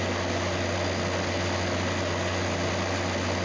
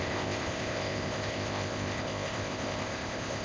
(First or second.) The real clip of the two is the first